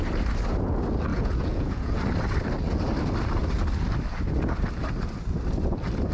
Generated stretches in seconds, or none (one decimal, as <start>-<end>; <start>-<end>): 1.1-2.0